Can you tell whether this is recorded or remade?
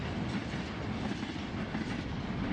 recorded